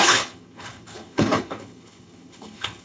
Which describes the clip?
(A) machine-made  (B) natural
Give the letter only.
A